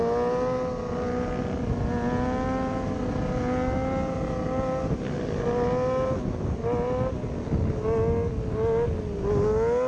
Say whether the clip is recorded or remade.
recorded